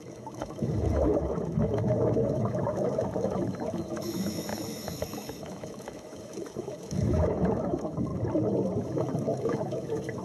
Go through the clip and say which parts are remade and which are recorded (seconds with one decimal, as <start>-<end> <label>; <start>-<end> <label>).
0.0-8.1 remade; 8.1-8.8 recorded; 8.8-10.2 remade